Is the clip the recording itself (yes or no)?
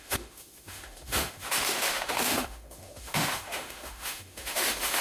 no